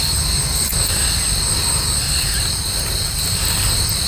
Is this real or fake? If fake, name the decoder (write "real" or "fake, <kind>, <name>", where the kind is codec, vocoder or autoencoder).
real